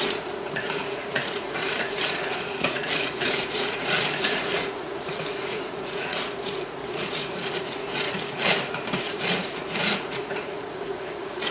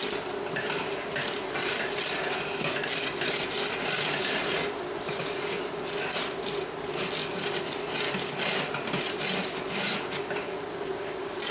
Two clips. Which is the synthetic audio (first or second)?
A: first